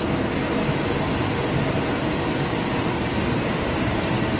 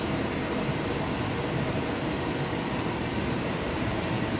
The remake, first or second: second